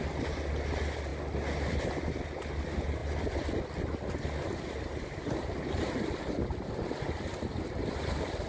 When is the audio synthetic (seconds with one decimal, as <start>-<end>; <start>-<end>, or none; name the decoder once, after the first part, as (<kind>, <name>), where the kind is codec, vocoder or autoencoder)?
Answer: none